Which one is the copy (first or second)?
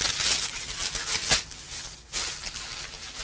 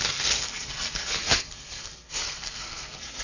second